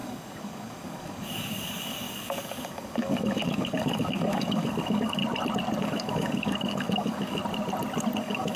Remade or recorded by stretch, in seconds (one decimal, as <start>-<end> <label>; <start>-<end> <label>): 0.0-5.2 remade; 5.2-5.8 recorded; 5.8-7.4 remade; 7.4-8.2 recorded; 8.2-8.6 remade